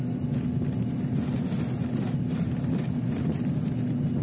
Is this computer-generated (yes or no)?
no